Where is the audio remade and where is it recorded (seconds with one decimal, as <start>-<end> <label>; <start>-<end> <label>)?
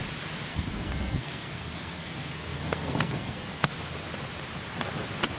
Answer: 0.0-0.5 recorded; 0.5-3.7 remade; 3.7-5.4 recorded